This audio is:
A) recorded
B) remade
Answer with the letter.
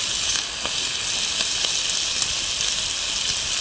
A